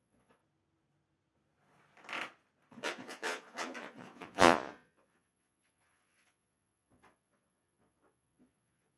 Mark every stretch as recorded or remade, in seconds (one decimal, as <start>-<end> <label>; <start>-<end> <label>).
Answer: 0.0-0.4 remade; 0.4-2.7 recorded; 2.7-9.0 remade